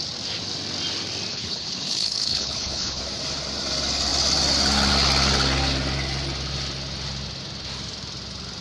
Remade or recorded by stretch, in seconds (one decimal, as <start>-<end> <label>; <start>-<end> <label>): 0.0-1.3 recorded; 1.3-3.0 remade; 3.0-8.6 recorded

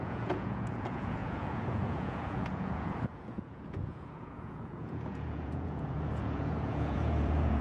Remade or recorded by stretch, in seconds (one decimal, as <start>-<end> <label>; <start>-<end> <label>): 0.0-7.6 remade

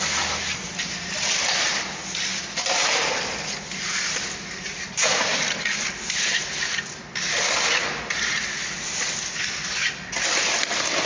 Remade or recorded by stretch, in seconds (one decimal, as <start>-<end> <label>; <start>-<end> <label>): 0.0-11.1 recorded

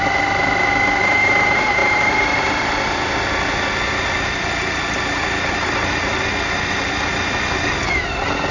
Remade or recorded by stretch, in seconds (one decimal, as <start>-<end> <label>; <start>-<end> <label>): 0.0-8.5 recorded

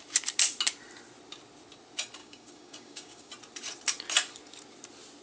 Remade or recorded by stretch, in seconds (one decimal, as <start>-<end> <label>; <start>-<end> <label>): 0.0-2.2 recorded; 2.2-3.3 remade; 3.3-5.2 recorded

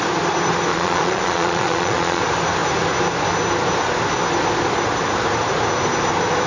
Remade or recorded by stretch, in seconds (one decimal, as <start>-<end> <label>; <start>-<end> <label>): 0.0-0.7 recorded; 0.7-2.2 remade; 2.2-6.5 recorded

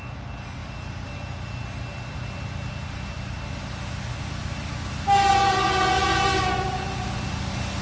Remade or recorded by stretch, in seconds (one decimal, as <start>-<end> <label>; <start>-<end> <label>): 0.0-7.8 recorded

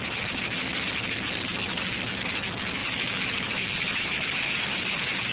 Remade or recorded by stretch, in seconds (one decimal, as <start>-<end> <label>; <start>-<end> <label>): 0.0-2.8 recorded; 2.8-4.4 remade; 4.4-5.3 recorded